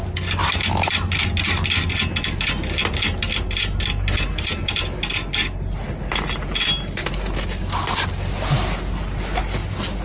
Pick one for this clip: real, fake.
real